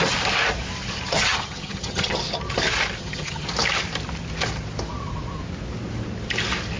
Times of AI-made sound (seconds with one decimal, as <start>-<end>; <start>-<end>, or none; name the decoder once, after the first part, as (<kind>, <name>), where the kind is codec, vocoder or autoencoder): 1.1-2.2 (vocoder, HiFi-GAN); 3.0-3.5